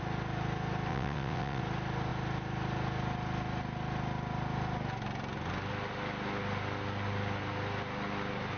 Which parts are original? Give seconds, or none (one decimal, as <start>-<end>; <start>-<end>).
0.0-0.9; 1.6-8.6